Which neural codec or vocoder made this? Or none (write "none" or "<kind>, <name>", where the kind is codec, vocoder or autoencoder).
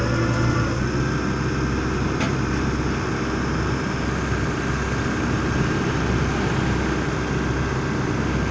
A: none